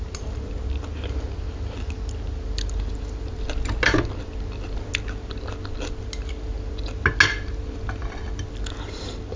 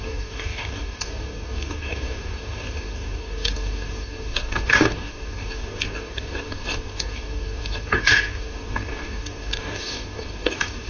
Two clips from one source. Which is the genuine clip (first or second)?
first